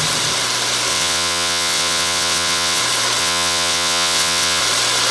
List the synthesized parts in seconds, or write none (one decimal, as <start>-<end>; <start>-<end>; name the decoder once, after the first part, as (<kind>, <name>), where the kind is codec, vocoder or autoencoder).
0.9-2.8 (vocoder, WaveNeXt); 3.2-4.6